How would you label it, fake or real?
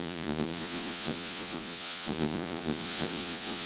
fake